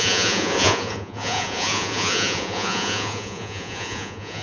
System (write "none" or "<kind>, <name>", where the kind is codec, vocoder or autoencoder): vocoder, Vocos